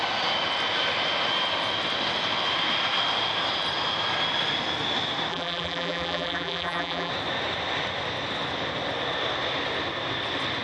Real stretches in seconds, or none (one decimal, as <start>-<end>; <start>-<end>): 0.0-5.3; 7.1-10.6